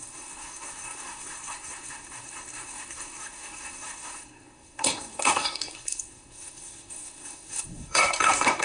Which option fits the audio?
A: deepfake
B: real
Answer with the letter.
A